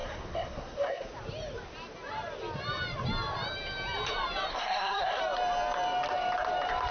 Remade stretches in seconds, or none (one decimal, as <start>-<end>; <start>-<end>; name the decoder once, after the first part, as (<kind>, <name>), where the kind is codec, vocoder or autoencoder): 0.0-1.1 (codec, SNAC); 4.5-5.2

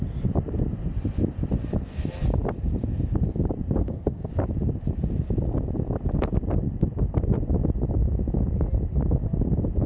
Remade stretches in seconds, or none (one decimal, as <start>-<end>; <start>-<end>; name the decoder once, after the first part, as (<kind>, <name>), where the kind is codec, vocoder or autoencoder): 3.8-4.3 (codec, SNAC)

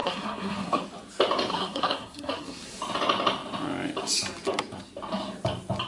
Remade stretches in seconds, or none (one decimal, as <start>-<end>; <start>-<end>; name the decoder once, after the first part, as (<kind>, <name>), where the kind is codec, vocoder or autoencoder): 0.0-0.8 (codec, SNAC); 1.5-2.8

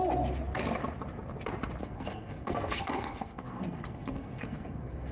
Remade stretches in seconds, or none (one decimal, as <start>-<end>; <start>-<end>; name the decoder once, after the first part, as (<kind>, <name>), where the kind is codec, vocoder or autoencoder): 1.8-5.1 (codec, SNAC)

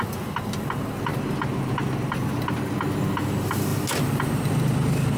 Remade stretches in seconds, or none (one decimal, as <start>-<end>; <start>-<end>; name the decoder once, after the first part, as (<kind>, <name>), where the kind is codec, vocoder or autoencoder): none

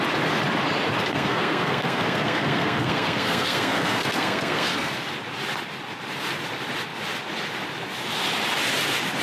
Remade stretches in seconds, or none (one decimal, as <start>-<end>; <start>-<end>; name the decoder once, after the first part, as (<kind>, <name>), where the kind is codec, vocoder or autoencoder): 1.0-4.9 (codec, SNAC)

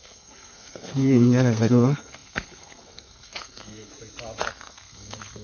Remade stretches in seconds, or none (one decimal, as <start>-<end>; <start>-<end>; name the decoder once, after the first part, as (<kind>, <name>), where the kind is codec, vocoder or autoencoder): 0.0-3.9 (codec, SNAC); 4.5-5.4

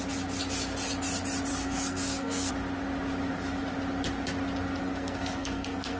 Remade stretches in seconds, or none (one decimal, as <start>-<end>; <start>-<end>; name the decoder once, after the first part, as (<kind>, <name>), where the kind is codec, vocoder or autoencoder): 1.5-2.5 (codec, SNAC); 4.8-6.0